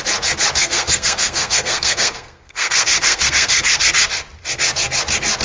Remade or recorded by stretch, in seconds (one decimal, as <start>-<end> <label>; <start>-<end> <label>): 0.0-0.6 recorded; 0.6-3.8 remade; 3.8-5.4 recorded

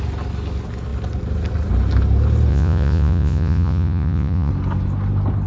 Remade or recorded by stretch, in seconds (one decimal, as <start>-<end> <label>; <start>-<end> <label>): 0.0-2.5 recorded; 2.5-4.5 remade; 4.5-5.5 recorded